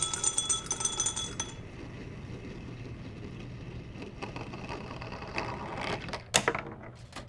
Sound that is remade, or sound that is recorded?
recorded